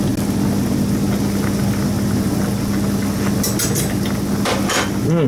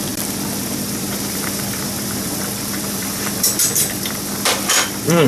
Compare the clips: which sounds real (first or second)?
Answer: first